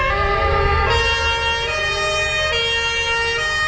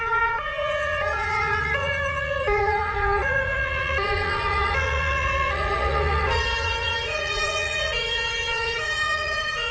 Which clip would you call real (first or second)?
first